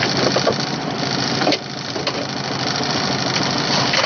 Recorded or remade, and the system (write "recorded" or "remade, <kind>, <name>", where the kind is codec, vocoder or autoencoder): recorded